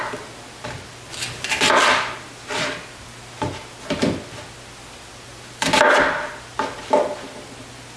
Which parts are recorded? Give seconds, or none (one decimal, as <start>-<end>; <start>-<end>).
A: 0.0-8.0